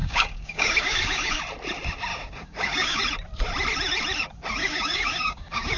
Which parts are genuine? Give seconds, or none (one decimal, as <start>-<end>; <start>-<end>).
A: 1.4-2.1; 3.0-4.6